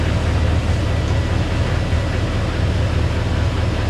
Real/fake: real